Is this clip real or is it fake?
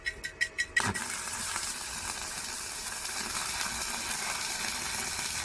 real